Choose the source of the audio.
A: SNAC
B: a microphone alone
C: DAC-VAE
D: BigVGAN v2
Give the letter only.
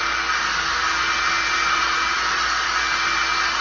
B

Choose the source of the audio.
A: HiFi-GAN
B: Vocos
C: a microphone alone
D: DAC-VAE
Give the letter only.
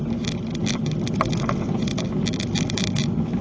C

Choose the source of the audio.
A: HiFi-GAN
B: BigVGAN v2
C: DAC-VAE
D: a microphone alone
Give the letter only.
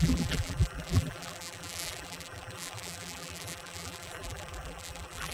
B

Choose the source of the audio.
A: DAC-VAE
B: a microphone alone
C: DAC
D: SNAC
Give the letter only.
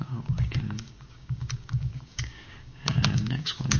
C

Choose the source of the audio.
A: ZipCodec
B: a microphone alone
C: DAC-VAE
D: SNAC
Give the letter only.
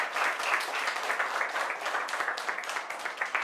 B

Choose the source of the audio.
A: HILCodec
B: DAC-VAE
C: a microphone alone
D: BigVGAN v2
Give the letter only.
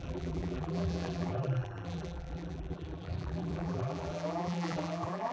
D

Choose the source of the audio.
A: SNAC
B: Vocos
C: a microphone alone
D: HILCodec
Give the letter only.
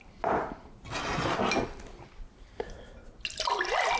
C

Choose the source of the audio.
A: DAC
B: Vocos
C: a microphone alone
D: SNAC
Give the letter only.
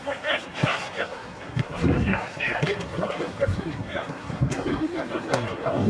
D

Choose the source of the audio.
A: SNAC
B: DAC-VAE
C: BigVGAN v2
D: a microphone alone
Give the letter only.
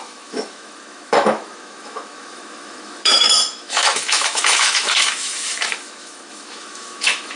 B